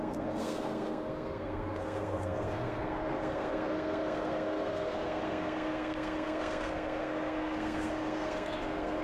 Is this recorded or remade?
remade